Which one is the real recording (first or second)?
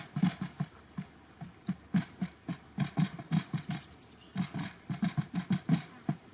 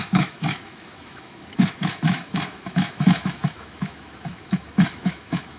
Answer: first